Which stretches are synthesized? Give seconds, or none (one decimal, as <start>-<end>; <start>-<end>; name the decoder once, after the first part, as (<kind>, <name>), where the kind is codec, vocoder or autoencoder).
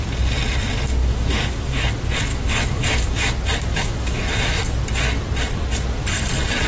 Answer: 1.0-1.9 (autoencoder, DAC-VAE); 2.3-3.3; 3.7-4.5